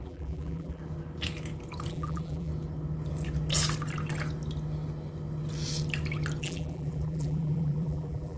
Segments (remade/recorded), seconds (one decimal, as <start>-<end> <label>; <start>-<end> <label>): 0.0-0.8 remade; 0.8-1.9 recorded; 1.9-2.5 remade; 2.5-6.4 recorded; 6.4-8.4 remade